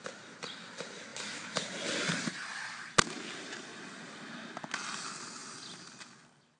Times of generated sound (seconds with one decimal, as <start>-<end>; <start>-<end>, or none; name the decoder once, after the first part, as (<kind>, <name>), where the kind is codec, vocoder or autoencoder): none